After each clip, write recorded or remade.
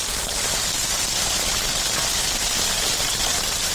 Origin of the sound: recorded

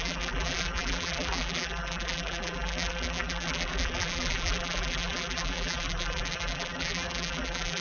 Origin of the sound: remade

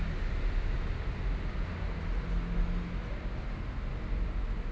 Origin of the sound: recorded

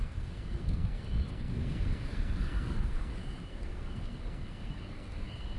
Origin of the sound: remade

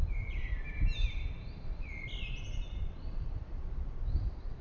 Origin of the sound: remade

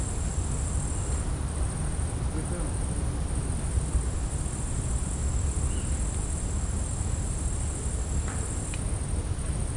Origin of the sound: recorded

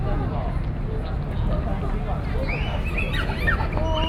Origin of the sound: recorded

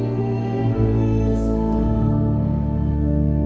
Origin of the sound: remade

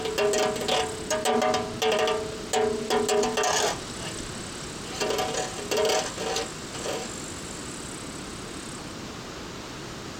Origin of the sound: recorded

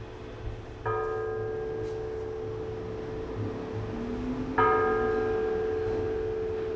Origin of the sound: recorded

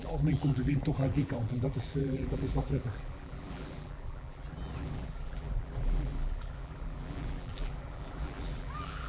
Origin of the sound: remade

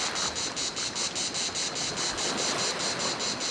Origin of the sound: recorded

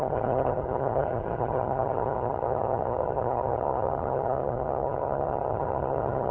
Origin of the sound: remade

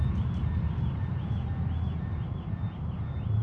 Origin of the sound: remade